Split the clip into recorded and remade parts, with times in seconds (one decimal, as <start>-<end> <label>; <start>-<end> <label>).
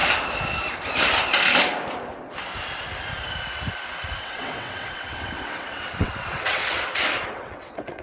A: 0.0-4.2 recorded; 4.2-6.6 remade; 6.6-7.3 recorded; 7.3-8.0 remade